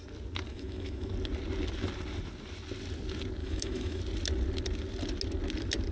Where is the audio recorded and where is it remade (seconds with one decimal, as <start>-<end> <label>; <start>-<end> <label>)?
0.0-0.5 recorded; 0.5-1.1 remade; 1.1-3.4 recorded; 3.4-4.0 remade; 4.0-5.9 recorded